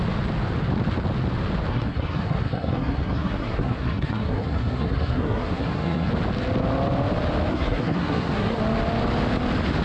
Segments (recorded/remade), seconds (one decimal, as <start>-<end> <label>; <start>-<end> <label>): 0.0-1.7 recorded; 1.7-6.1 remade; 6.1-7.5 recorded; 7.5-8.6 remade; 8.6-9.8 recorded